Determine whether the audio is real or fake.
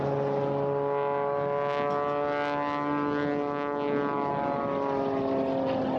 real